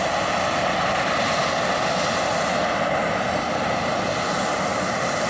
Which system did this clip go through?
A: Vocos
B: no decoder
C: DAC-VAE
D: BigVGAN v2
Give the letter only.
B